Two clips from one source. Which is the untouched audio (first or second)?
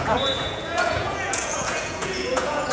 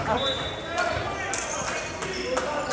second